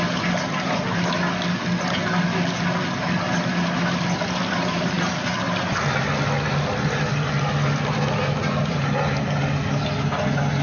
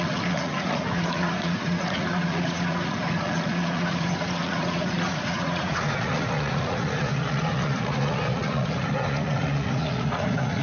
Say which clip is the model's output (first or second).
second